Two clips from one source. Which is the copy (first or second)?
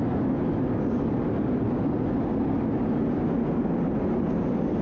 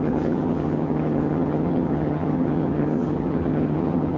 second